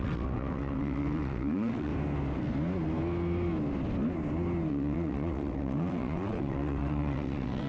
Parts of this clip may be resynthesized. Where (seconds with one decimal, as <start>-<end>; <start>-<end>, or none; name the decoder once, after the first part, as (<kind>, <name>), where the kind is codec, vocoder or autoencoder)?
0.0-1.9 (vocoder, WaveNeXt); 4.7-7.7